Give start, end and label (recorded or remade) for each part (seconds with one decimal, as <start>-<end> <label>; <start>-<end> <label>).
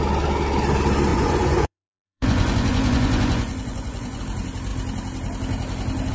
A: 0.0-1.1 recorded; 1.1-4.2 remade; 4.2-6.1 recorded